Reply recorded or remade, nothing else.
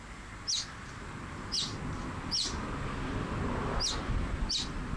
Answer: recorded